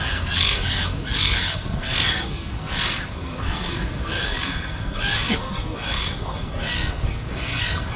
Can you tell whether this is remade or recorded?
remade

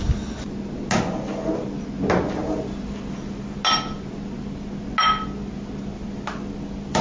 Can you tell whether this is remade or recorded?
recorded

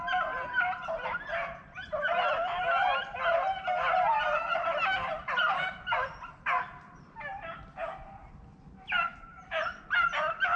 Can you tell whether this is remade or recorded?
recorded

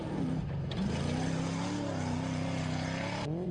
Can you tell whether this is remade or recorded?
recorded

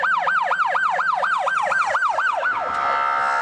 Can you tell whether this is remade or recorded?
recorded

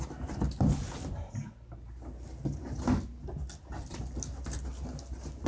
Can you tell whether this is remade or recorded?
recorded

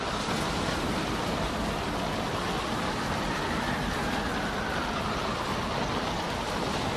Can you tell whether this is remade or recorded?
recorded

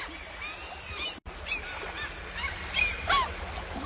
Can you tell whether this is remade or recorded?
recorded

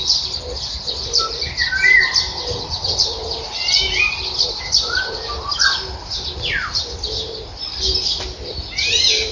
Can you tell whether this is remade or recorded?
recorded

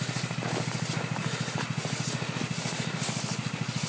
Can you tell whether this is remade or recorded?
recorded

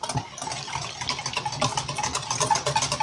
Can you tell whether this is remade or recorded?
recorded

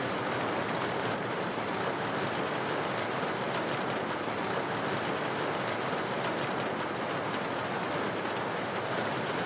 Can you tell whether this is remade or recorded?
recorded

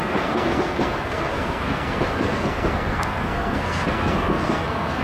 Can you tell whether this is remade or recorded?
remade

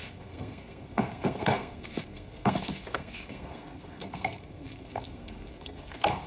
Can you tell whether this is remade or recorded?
remade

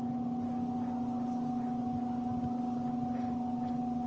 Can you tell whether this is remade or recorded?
recorded